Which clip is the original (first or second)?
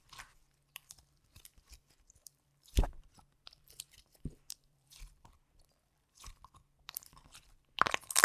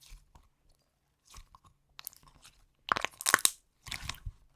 second